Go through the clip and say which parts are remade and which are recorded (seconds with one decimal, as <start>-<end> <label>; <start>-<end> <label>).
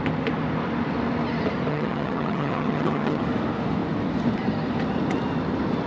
0.0-1.7 recorded; 1.7-3.2 remade; 3.2-5.9 recorded